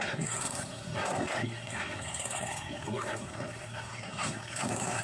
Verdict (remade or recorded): remade